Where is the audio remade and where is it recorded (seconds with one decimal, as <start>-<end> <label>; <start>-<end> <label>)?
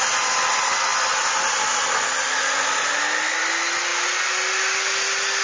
0.0-5.4 recorded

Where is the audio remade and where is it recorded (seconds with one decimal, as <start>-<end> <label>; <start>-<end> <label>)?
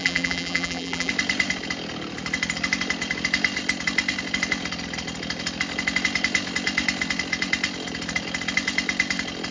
0.0-1.1 remade; 1.1-9.5 recorded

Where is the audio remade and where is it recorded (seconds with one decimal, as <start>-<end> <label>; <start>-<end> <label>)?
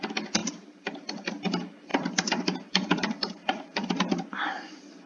0.0-0.4 recorded; 0.4-1.3 remade; 1.3-1.9 recorded; 1.9-4.3 remade; 4.3-5.1 recorded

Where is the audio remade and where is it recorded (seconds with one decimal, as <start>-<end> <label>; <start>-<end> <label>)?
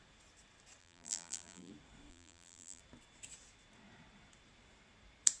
0.0-0.8 recorded; 0.8-1.7 remade; 1.7-2.1 recorded; 2.1-2.8 remade; 2.8-5.4 recorded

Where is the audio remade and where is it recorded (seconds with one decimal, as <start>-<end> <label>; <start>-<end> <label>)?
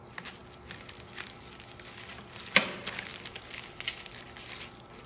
0.0-5.1 recorded